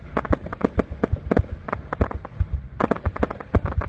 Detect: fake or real real